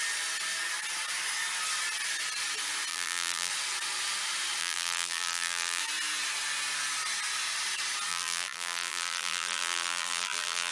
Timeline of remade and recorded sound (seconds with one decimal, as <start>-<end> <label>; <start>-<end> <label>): 0.0-2.9 recorded; 2.9-3.5 remade; 3.5-4.6 recorded; 4.6-5.8 remade; 5.8-8.1 recorded; 8.1-10.7 remade